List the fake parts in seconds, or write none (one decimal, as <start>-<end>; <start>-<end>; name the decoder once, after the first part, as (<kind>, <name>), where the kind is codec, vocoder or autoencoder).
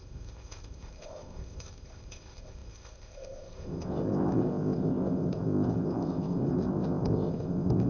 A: 0.0-7.9 (codec, ZipCodec)